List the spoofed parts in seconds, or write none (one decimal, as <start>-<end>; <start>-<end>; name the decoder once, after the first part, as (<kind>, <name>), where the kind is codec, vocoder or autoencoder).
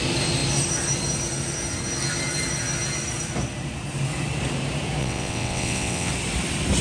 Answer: 5.0-6.1 (vocoder, WaveNeXt)